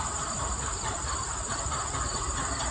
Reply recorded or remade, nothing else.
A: remade